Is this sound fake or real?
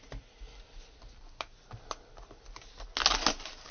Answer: real